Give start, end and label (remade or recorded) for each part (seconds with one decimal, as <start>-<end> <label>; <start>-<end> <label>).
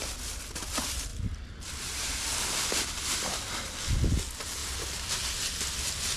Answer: 0.0-1.1 recorded; 1.1-3.8 remade; 3.8-6.2 recorded